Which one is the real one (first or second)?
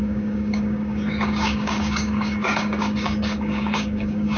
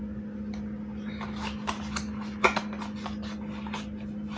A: second